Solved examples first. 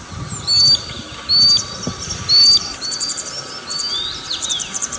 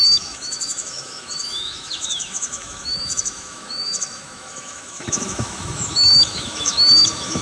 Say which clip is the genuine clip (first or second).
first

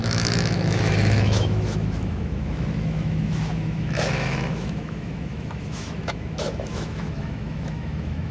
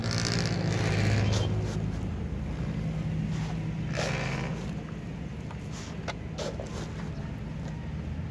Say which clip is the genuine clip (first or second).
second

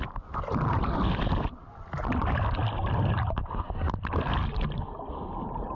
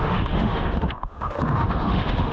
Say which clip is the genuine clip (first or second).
first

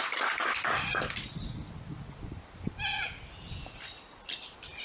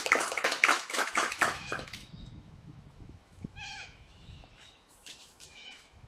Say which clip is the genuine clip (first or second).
first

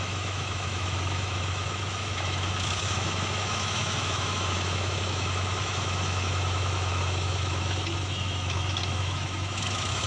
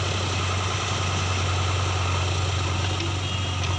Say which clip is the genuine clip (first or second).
second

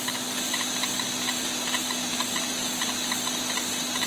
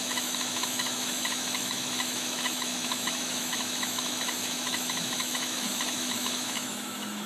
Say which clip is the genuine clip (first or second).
first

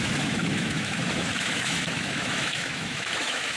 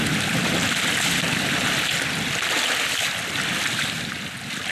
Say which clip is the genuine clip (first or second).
second